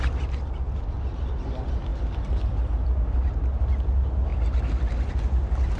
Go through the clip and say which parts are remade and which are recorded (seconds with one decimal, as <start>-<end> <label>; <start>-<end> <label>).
0.0-5.8 recorded